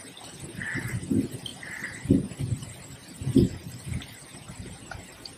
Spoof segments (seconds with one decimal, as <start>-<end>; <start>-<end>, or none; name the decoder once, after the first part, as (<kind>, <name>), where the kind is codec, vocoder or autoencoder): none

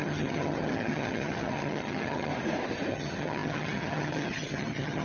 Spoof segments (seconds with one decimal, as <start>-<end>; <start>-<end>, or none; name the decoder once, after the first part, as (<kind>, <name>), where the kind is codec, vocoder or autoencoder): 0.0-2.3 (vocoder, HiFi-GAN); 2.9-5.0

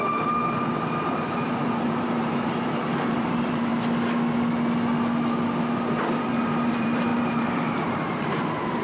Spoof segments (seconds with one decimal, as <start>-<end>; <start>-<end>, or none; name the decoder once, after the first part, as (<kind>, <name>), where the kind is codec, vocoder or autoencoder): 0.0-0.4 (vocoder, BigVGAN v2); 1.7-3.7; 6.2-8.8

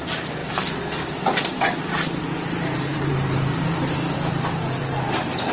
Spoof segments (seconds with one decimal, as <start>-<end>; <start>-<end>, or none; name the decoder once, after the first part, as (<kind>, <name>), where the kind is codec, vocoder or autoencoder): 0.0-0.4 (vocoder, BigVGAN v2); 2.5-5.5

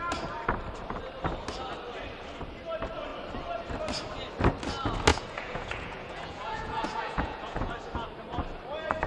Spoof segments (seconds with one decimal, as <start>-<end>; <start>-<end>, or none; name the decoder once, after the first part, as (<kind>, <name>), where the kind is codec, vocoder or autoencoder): 5.1-7.7 (vocoder, Vocos)

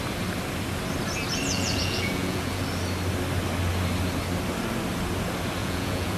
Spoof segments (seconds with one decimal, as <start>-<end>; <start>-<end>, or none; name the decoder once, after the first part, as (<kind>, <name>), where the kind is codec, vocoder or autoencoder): 1.5-2.6 (vocoder, Vocos); 5.6-6.2